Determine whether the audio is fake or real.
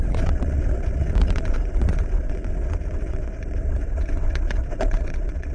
fake